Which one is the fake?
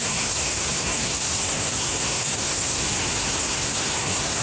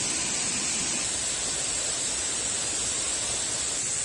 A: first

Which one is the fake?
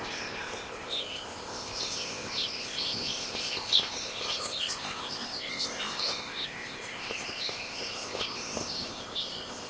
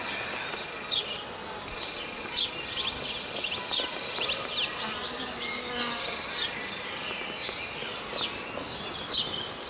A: first